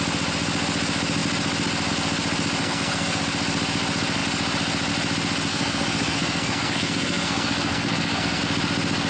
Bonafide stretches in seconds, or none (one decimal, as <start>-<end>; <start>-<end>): 0.0-2.6; 3.2-5.5; 8.4-9.1